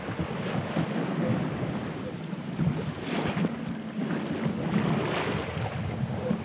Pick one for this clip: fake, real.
real